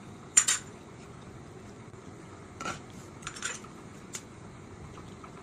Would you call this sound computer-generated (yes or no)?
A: yes